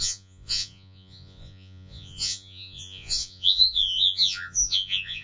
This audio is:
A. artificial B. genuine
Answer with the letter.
A